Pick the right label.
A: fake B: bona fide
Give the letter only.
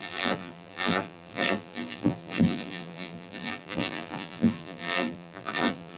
A